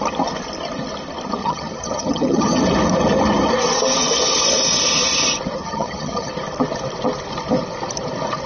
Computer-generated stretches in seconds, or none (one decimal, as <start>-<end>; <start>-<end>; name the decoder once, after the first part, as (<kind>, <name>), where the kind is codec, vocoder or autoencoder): 1.4-2.6 (vocoder, HiFi-GAN); 5.6-6.3